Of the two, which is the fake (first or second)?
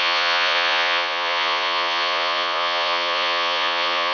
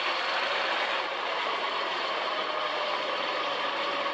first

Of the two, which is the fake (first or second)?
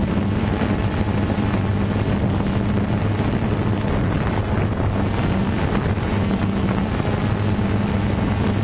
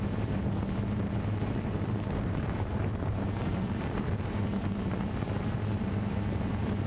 second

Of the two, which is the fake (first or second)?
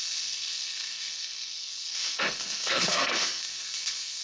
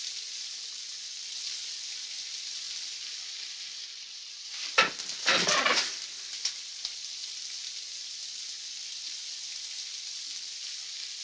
first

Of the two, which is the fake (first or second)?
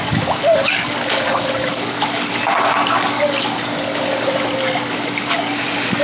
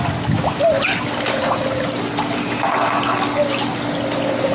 first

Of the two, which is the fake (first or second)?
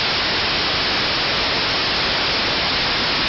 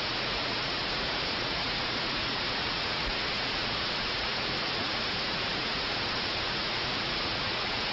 second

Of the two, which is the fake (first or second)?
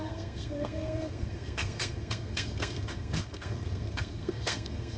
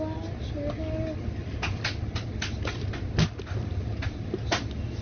first